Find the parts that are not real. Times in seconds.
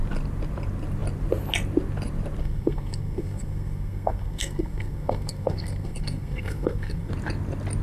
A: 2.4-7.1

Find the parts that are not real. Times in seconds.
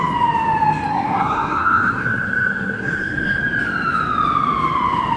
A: 0.9-3.4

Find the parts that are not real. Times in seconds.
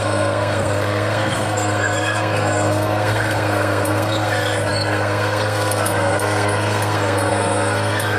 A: 0.0-8.2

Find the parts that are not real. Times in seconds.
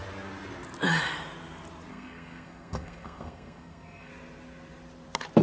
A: 1.9-4.1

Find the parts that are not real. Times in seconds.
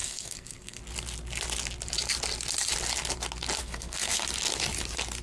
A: 0.0-0.8; 3.6-4.2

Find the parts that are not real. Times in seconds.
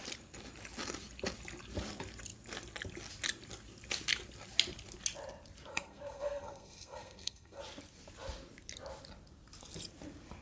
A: 5.7-7.6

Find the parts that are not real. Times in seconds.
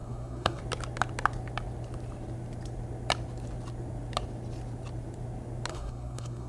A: 0.0-0.6; 5.7-6.5